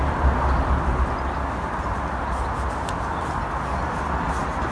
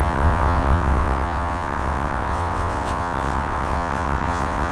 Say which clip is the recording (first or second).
first